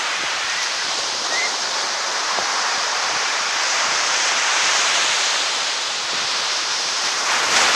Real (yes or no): no